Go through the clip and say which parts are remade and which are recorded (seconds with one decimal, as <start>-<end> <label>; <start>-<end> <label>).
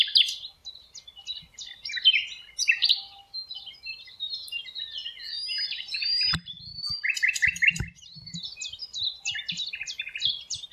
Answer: 0.0-10.7 recorded